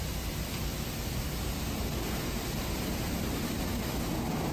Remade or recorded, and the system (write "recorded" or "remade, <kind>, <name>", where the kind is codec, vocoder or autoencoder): recorded